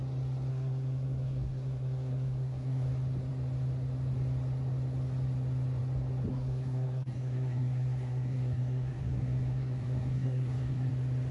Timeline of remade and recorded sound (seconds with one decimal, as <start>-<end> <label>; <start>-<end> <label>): 0.0-0.5 recorded; 0.5-2.9 remade; 2.9-6.3 recorded; 6.3-10.9 remade; 10.9-11.3 recorded